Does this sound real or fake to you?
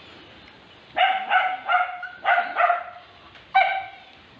real